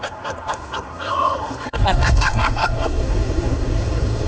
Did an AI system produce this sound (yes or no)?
yes